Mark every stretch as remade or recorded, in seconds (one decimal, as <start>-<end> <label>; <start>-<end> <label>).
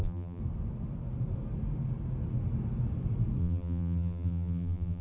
0.0-0.4 remade; 0.4-3.4 recorded; 3.4-5.0 remade